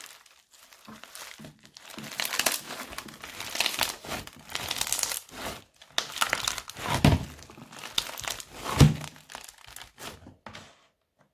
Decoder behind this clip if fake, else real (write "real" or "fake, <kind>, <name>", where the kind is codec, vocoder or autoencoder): real